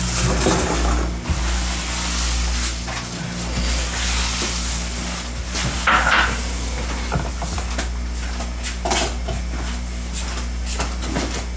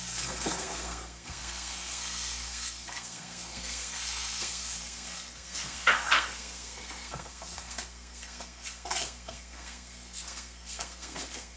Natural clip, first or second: first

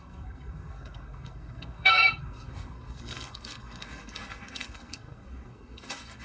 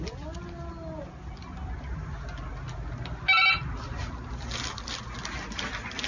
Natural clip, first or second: second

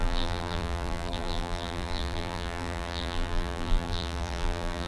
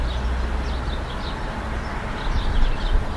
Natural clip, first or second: second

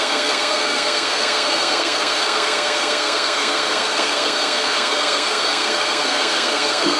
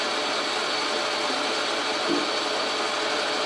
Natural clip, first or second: second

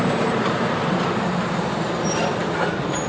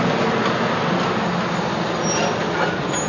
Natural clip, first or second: second